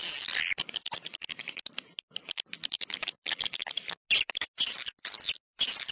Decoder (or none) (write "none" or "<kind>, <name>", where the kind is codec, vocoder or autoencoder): none